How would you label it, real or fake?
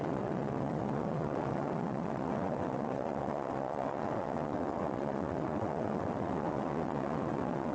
fake